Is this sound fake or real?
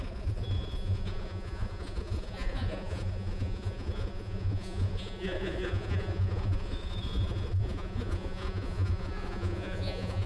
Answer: fake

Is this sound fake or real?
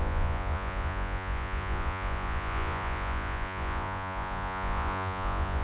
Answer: fake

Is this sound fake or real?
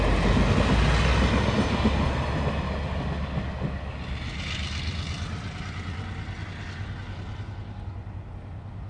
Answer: real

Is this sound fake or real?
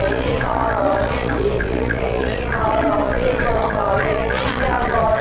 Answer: fake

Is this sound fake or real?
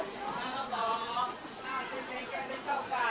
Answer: fake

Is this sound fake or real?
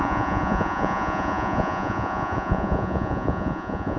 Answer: fake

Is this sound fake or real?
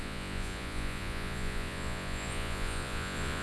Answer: fake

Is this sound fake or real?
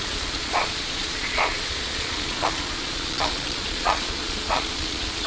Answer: fake